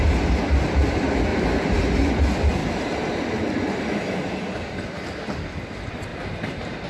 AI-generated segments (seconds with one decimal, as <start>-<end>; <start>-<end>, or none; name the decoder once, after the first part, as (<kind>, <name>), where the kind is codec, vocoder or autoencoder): 1.3-1.8 (vocoder, BigVGAN v2); 2.6-3.5; 6.1-6.9